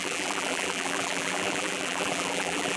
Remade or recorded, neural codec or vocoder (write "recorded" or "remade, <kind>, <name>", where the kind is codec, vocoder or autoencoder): remade, vocoder, BigVGAN v2